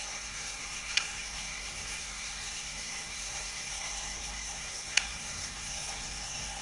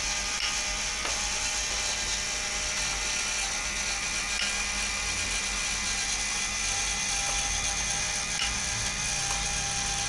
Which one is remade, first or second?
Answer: first